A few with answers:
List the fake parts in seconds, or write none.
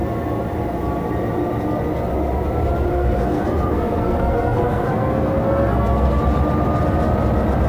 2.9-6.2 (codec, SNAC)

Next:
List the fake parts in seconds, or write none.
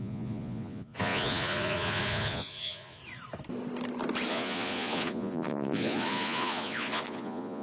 0.0-3.0 (vocoder, Vocos); 4.3-7.6